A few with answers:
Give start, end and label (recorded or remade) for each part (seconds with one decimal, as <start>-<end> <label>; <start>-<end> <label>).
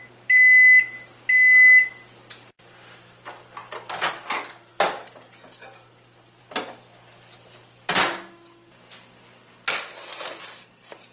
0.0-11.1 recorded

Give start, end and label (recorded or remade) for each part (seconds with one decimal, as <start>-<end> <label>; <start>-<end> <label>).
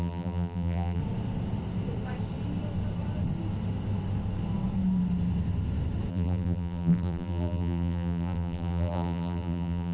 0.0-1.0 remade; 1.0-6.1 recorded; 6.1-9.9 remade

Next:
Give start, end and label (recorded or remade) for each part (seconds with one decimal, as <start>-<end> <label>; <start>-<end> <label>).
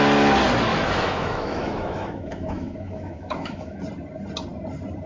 0.0-0.7 recorded; 0.7-3.8 remade; 3.8-5.1 recorded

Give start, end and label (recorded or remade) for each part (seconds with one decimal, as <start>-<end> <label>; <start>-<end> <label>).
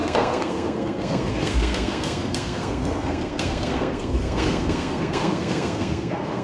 0.0-6.4 remade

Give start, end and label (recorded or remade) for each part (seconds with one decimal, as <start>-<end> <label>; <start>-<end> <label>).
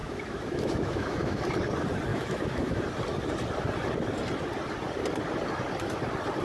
0.0-1.4 remade; 1.4-2.1 recorded; 2.1-2.8 remade; 2.8-6.4 recorded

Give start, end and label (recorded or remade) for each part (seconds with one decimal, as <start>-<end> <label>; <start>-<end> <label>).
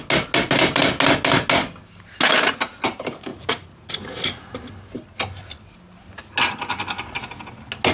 0.0-3.3 recorded; 3.3-3.9 remade; 3.9-7.9 recorded